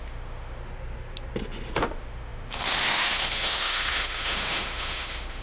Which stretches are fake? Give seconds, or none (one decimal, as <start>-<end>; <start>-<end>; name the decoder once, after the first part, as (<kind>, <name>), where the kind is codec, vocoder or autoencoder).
0.0-0.6 (autoencoder, DAC-VAE); 1.8-5.4